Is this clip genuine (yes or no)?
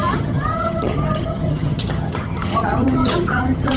no